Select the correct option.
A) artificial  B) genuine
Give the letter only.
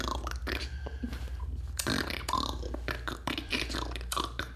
A